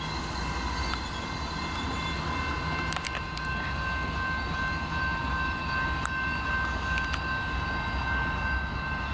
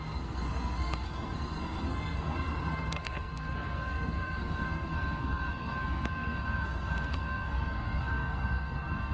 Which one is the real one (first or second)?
first